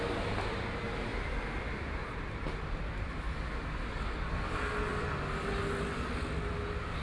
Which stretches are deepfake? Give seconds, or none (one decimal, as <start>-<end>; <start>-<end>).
none